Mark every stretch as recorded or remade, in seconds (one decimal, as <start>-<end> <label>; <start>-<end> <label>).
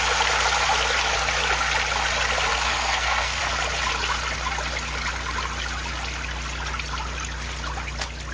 0.0-2.5 recorded; 2.5-3.4 remade; 3.4-8.3 recorded